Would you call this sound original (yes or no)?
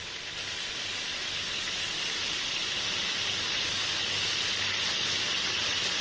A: yes